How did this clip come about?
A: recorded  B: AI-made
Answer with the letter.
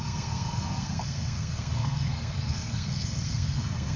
B